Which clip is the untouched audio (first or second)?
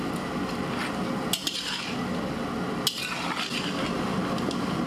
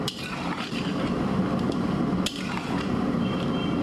first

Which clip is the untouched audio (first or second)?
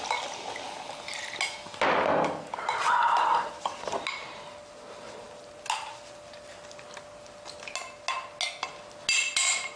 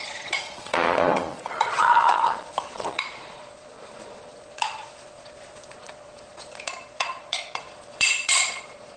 first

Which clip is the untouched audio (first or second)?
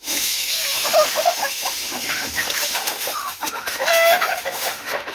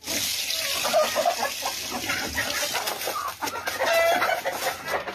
second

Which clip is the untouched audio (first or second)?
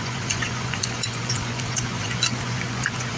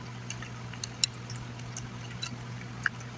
second